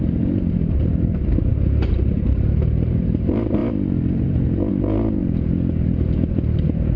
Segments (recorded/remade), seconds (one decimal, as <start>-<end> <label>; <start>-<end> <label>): 0.0-5.2 remade; 5.2-7.0 recorded